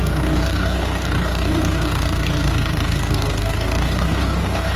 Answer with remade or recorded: remade